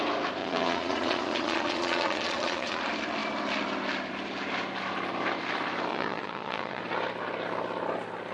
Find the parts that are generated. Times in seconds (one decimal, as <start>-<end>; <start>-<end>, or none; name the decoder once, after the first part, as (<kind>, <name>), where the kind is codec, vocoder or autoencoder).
0.4-2.8 (vocoder, Vocos); 5.9-6.8